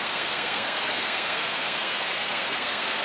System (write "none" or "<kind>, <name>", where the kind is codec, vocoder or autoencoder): codec, SNAC